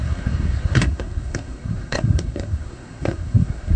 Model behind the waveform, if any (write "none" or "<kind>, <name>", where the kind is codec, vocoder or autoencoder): codec, SNAC